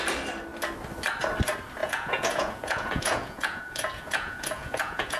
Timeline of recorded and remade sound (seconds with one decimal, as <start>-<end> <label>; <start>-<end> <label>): 0.0-1.8 recorded; 1.8-5.2 remade